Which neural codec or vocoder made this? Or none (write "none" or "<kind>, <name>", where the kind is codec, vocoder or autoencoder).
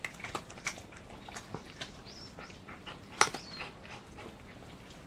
none